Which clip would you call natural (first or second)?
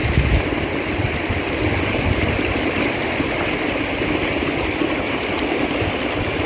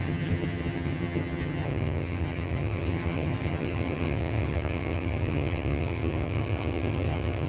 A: first